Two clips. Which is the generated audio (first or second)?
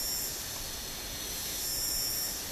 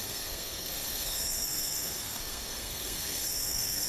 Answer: second